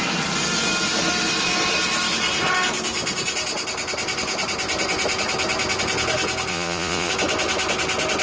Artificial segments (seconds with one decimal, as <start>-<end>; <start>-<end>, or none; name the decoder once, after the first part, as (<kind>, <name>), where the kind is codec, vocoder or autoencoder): 6.5-7.1 (vocoder, Vocos)